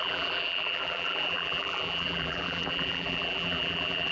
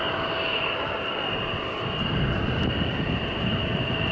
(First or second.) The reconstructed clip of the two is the first